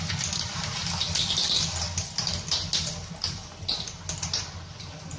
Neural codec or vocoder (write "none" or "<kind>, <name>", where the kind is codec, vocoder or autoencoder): none